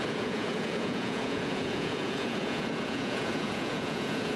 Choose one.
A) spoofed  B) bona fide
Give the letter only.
A